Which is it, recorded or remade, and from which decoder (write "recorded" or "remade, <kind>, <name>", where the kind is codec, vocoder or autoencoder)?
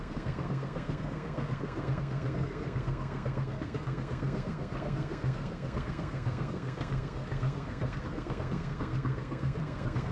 remade, codec, SNAC